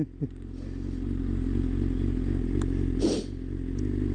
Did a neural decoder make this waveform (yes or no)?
no